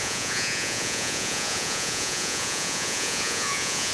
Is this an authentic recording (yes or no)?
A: no